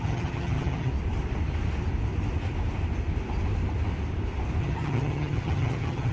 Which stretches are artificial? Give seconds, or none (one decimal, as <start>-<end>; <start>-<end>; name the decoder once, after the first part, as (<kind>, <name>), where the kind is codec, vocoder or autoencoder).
0.0-0.9 (vocoder, HiFi-GAN); 4.6-6.1